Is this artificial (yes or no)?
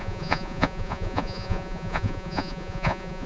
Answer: yes